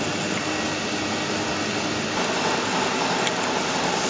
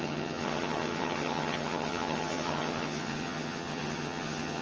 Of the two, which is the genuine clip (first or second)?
first